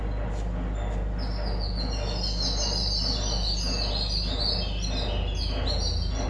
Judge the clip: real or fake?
real